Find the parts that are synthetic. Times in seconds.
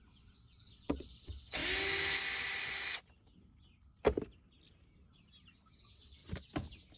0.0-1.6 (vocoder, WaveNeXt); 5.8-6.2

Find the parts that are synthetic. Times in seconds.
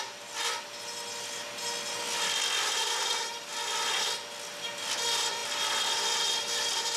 none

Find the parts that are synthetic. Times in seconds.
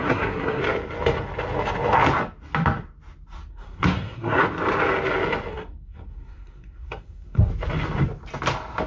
0.0-0.6 (codec, SNAC); 3.5-4.4; 5.5-7.5